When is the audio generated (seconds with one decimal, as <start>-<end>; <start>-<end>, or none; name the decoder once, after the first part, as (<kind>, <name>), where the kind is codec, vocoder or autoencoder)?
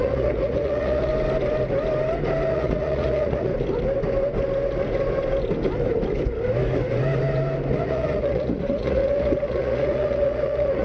0.0-1.1 (vocoder, Vocos); 2.5-3.5; 7.8-10.8